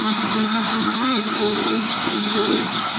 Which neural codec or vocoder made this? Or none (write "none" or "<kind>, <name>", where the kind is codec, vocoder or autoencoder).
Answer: codec, SNAC